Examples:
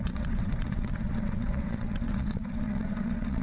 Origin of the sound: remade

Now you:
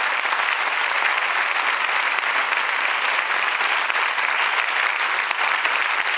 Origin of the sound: recorded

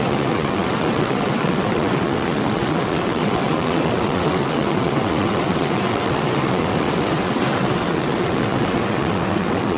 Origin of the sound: remade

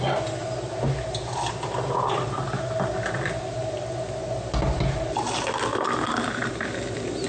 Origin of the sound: recorded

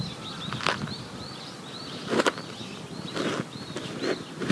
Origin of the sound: recorded